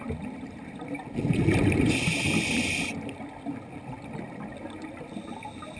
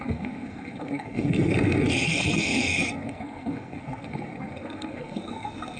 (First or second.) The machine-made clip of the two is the second